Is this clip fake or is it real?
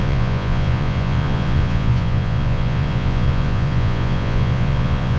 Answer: fake